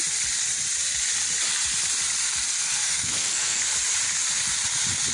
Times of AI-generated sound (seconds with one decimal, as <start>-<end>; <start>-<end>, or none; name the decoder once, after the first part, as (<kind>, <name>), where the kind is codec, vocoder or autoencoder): 2.6-3.6 (codec, SNAC)